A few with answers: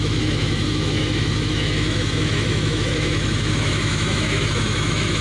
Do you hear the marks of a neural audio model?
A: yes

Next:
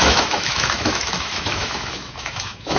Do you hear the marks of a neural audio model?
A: yes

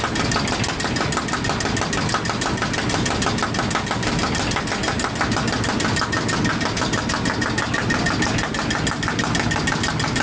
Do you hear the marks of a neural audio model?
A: no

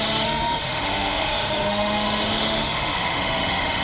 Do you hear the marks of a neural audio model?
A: yes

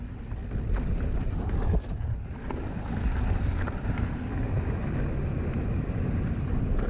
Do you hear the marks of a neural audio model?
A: no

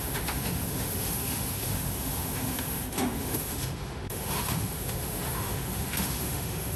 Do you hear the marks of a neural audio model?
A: yes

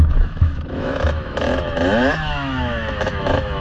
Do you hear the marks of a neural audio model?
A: yes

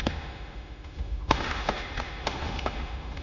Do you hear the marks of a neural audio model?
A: yes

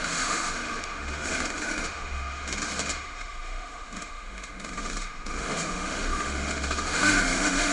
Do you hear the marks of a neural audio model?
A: yes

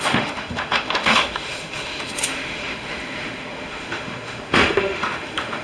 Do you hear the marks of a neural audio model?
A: yes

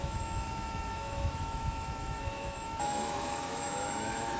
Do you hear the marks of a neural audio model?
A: yes